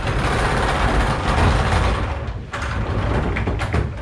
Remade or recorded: recorded